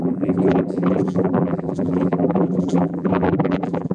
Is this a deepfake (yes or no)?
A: yes